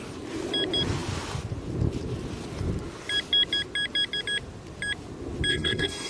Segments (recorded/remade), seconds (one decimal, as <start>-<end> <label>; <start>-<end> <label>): 0.0-5.5 recorded; 5.5-6.1 remade